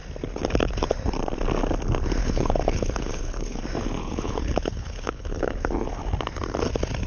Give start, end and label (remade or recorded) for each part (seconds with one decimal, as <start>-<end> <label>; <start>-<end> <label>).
0.0-2.2 recorded; 2.2-3.6 remade; 3.6-4.0 recorded; 4.0-5.7 remade; 5.7-7.1 recorded